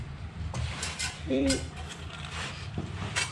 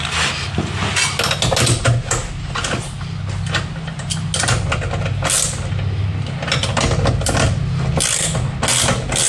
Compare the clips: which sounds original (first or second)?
second